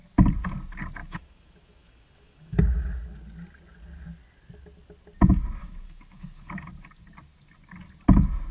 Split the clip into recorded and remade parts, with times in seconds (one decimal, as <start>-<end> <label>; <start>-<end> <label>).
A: 0.0-1.0 recorded; 1.0-2.6 remade; 2.6-5.6 recorded; 5.6-6.5 remade; 6.5-8.5 recorded